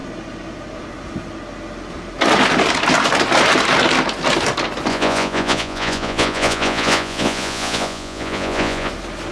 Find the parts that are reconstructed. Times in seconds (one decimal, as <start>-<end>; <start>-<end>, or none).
4.9-8.9